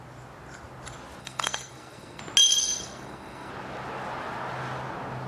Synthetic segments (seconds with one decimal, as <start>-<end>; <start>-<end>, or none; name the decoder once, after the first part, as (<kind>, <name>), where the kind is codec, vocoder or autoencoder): 1.2-2.2 (codec, SNAC); 2.6-3.5